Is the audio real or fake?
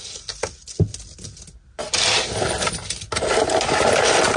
real